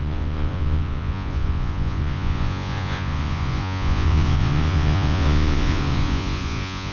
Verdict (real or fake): fake